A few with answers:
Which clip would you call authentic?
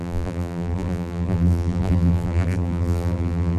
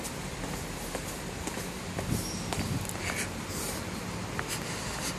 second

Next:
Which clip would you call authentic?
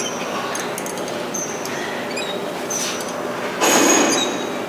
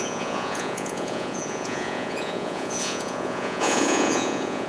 first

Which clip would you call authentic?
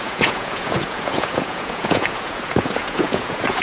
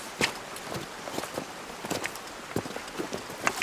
second